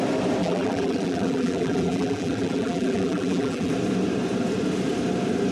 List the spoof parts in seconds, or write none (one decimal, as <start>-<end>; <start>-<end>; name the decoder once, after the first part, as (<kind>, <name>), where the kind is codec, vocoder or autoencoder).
0.4-3.7 (vocoder, BigVGAN v2)